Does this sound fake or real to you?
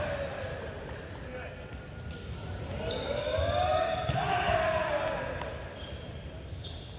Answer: real